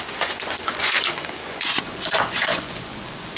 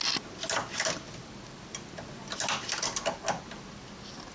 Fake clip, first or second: first